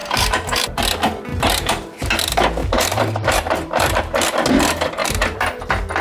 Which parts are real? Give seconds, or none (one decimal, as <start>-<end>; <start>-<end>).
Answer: 0.8-1.3; 2.1-2.6; 4.0-5.0; 5.6-6.0